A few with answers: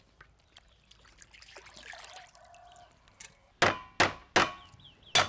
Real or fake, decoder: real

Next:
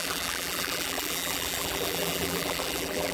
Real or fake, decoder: fake, vocoder, BigVGAN v2